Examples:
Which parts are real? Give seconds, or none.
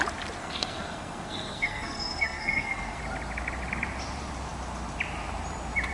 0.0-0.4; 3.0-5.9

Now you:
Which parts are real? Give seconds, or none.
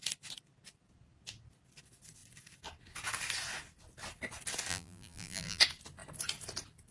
0.0-4.7; 5.6-6.9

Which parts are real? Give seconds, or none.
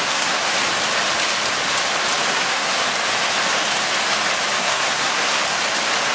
0.5-2.3; 2.8-4.6; 5.4-6.1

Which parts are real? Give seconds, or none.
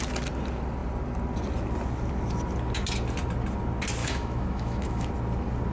0.0-4.0; 5.1-5.7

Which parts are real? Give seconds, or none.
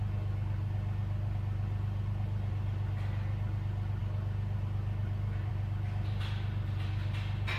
0.0-7.6